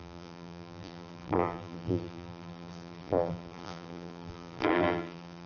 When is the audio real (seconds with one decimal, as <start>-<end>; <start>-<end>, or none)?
none